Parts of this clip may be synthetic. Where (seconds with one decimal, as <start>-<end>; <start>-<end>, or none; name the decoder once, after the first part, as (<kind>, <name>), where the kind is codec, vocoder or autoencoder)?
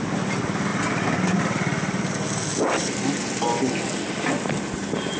none